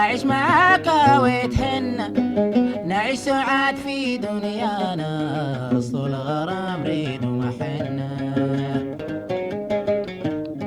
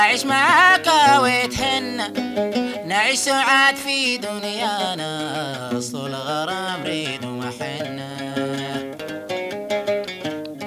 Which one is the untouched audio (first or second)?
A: second